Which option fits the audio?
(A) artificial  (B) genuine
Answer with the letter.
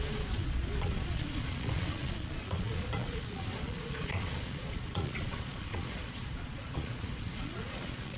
A